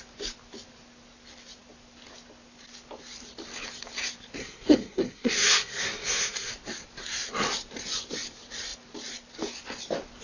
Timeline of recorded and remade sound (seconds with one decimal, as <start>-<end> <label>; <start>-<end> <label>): 0.0-4.4 recorded; 4.4-6.5 remade; 6.5-10.2 recorded